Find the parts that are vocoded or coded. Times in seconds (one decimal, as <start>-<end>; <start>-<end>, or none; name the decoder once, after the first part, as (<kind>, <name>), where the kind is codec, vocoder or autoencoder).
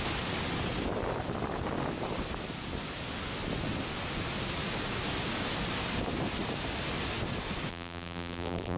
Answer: 7.7-8.8 (vocoder, BigVGAN v2)